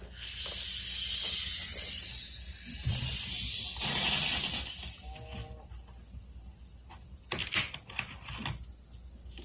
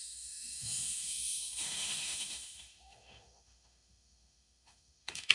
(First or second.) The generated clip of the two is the second